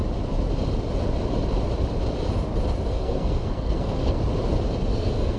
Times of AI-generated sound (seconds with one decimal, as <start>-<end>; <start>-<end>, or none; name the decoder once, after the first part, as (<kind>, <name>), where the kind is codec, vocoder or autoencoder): 2.9-4.2 (codec, SNAC); 4.9-5.4